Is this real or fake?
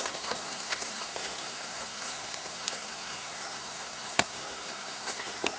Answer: fake